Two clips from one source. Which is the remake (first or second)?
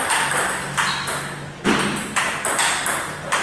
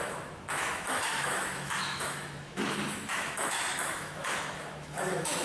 second